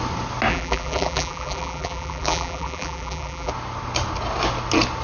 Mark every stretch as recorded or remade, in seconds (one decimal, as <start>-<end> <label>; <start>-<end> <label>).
0.0-0.5 recorded; 0.5-3.5 remade; 3.5-5.0 recorded